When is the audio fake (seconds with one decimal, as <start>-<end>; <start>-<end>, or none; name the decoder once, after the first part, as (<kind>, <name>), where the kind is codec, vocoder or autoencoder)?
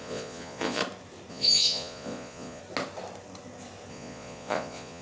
0.0-0.8 (vocoder, Vocos); 1.3-2.6; 3.9-5.0